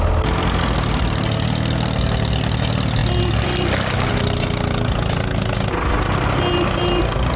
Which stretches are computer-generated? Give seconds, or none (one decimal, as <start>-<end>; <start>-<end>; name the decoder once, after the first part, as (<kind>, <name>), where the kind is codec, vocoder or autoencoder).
none